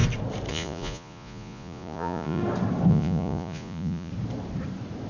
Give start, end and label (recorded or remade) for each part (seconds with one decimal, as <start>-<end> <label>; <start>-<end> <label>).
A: 0.0-0.5 recorded; 0.5-2.4 remade; 2.4-2.9 recorded; 2.9-4.1 remade; 4.1-5.1 recorded